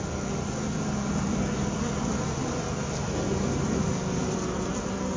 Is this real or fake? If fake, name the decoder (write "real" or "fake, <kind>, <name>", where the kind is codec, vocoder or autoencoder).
real